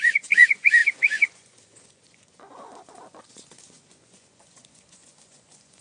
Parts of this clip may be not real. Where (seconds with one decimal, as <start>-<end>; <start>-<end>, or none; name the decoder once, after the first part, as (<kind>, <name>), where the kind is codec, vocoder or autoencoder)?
0.0-5.8 (vocoder, Vocos)